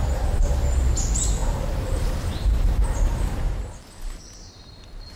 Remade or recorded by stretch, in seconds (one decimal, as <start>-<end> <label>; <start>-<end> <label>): 0.0-0.6 remade; 0.6-5.2 recorded